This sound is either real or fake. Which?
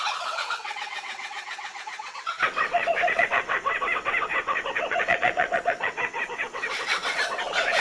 fake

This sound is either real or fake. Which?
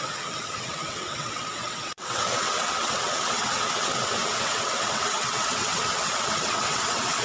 fake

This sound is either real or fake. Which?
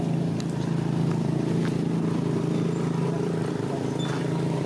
real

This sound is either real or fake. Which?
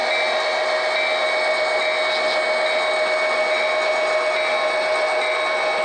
real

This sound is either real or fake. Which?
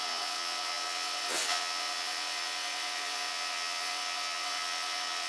fake